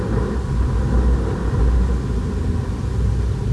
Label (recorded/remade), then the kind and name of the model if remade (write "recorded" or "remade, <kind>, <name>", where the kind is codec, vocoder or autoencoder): recorded